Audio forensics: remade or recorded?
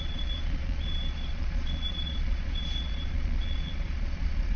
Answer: remade